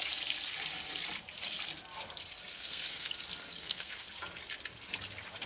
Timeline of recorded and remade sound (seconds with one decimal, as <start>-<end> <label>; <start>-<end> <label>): 0.0-2.5 recorded; 2.5-3.1 remade; 3.1-3.6 recorded; 3.6-4.1 remade; 4.1-5.5 recorded